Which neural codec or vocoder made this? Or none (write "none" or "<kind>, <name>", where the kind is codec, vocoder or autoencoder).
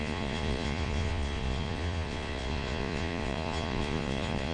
vocoder, Vocos